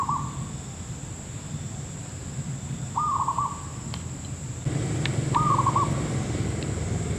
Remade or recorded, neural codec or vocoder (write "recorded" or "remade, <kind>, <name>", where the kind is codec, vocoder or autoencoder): recorded